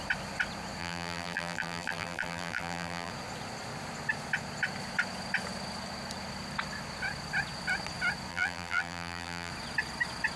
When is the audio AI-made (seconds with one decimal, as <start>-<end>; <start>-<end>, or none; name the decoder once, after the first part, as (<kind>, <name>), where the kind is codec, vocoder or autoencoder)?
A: 0.8-3.1 (vocoder, BigVGAN v2); 8.3-9.5